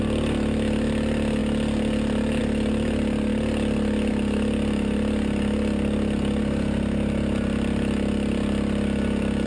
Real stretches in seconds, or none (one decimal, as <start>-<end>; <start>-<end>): 0.0-9.5